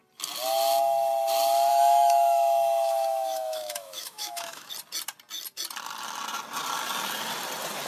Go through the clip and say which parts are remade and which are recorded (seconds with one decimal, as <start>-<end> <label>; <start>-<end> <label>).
0.0-1.7 recorded; 1.7-4.7 remade; 4.7-7.9 recorded